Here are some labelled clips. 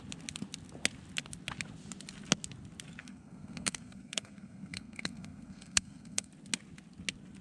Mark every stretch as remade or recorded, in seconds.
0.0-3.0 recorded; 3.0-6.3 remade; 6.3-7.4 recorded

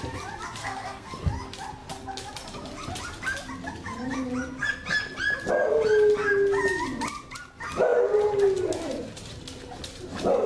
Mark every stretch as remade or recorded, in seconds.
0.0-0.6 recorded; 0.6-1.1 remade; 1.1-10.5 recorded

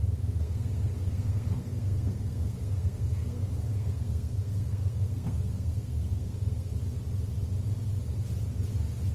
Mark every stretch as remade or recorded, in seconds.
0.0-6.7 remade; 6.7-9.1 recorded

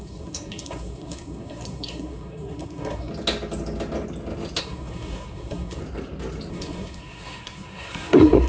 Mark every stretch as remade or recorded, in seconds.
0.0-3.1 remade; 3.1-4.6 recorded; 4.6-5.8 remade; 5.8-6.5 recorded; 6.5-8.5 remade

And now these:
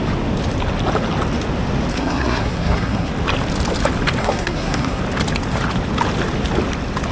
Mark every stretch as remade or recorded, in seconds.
0.0-1.9 recorded; 1.9-3.1 remade; 3.1-4.2 recorded; 4.2-5.0 remade; 5.0-7.1 recorded

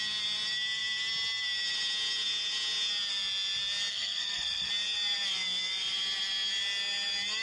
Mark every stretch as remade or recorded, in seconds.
0.0-3.9 recorded; 3.9-4.7 remade; 4.7-7.4 recorded